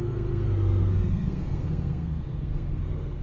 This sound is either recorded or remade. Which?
remade